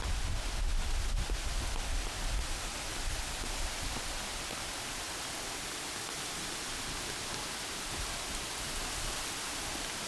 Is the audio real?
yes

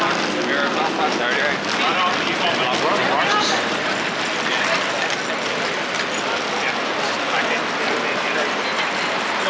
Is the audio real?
yes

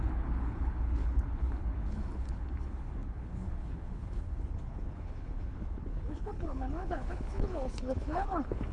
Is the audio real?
no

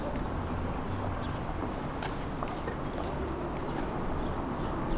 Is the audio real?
yes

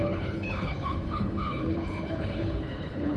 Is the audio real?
no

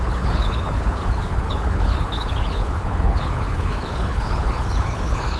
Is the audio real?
no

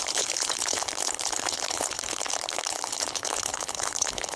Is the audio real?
no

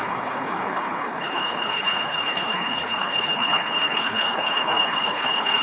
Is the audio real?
no